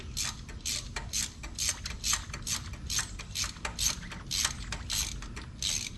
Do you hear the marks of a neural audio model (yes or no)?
no